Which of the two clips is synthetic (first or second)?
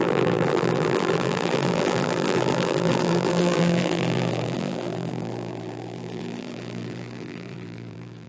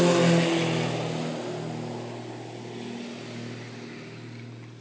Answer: first